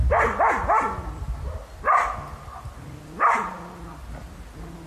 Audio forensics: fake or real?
real